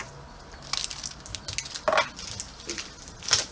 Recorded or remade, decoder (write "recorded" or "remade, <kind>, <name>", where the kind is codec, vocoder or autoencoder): recorded